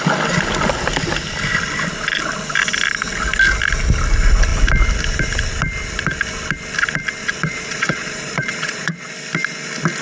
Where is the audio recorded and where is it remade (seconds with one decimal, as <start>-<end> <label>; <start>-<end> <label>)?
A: 0.0-7.2 recorded; 7.2-9.1 remade; 9.1-10.0 recorded